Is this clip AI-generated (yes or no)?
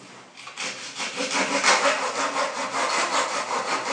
no